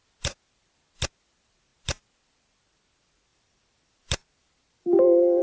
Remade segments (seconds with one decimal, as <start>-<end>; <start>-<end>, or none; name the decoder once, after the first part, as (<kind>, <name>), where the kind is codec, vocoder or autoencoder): 3.3-5.4 (vocoder, BigVGAN v2)